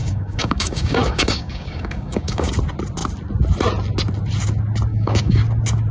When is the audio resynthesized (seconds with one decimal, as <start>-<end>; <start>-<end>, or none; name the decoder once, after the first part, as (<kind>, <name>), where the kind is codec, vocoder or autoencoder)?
0.0-2.5 (codec, DAC); 4.9-5.4